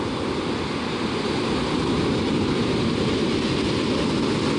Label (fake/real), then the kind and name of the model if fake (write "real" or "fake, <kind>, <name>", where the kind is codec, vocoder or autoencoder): real